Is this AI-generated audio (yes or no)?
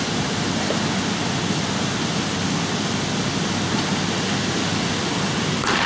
no